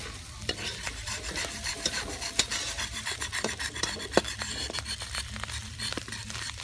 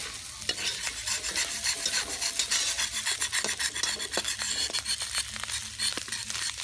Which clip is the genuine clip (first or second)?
second